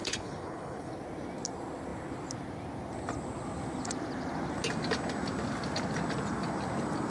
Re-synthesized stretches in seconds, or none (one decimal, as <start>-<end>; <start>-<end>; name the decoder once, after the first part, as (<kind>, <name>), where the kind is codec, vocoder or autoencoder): 0.0-0.9 (codec, HILCodec)